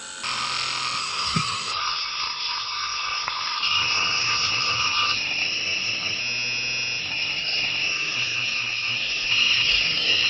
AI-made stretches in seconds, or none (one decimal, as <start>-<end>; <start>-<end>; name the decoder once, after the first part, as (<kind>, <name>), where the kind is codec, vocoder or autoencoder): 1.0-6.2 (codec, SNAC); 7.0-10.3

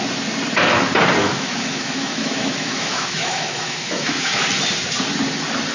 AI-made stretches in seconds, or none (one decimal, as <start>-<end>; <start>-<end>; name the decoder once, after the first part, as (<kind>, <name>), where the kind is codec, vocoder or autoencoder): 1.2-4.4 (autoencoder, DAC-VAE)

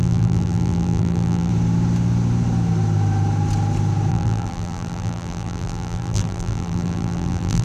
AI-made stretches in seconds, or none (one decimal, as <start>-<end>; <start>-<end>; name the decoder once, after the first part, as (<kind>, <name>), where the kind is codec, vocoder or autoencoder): 0.0-1.5 (vocoder, BigVGAN v2); 4.1-7.6

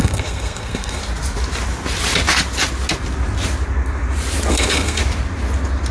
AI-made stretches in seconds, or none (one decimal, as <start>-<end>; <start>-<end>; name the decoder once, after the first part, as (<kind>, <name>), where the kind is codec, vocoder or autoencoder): 0.0-1.0 (codec, SNAC); 4.5-5.0

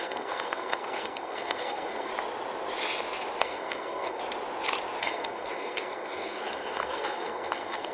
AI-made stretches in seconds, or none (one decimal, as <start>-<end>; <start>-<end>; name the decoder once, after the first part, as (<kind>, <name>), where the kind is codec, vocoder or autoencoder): 0.0-2.1 (codec, SNAC); 3.4-4.2; 5.0-7.9